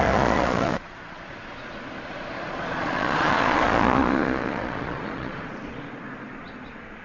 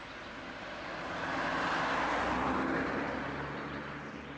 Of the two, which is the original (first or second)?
second